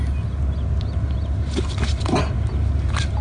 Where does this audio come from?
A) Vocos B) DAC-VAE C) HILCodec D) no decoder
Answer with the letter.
D